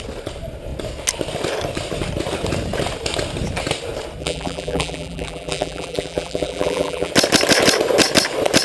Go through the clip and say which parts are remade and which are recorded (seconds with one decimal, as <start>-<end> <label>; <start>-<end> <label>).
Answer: 0.0-4.2 recorded; 4.2-7.1 remade; 7.1-8.6 recorded